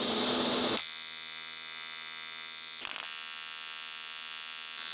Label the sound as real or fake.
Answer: real